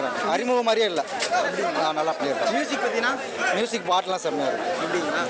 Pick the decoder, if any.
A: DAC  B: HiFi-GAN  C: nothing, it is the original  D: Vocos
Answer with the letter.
C